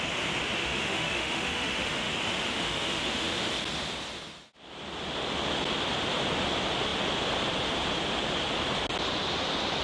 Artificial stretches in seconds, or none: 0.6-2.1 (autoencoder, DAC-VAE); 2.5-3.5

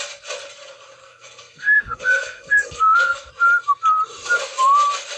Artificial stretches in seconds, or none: 1.0-3.3 (codec, SNAC)

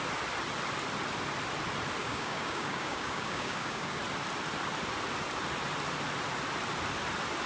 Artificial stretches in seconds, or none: 2.0-4.0 (codec, DAC)